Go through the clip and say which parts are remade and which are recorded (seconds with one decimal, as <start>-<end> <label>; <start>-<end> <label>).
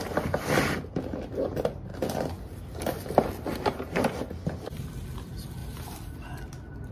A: 0.0-5.6 recorded; 5.6-6.9 remade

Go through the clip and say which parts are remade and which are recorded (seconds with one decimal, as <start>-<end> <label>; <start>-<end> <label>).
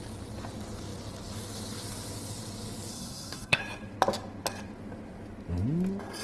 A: 0.0-2.9 recorded; 2.9-3.6 remade; 3.6-6.2 recorded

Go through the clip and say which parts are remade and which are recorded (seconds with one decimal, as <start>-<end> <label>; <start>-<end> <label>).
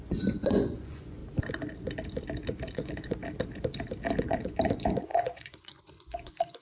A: 0.0-1.2 remade; 1.2-2.7 recorded; 2.7-3.2 remade; 3.2-4.2 recorded; 4.2-6.6 remade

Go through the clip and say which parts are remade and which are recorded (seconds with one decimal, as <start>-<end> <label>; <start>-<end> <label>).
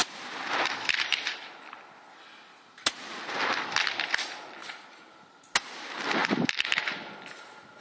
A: 0.0-7.8 recorded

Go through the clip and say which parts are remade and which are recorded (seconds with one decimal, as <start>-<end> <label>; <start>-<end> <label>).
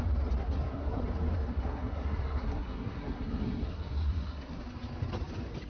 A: 0.0-0.4 recorded; 0.4-1.0 remade; 1.0-1.5 recorded; 1.5-4.6 remade; 4.6-5.7 recorded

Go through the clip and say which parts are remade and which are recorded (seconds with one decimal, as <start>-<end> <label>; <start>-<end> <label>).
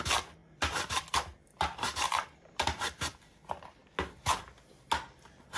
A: 0.0-0.4 recorded; 0.4-3.3 remade; 3.3-5.6 recorded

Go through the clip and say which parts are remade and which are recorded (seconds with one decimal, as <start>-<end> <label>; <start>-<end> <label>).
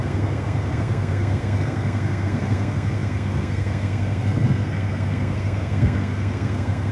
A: 0.0-6.9 remade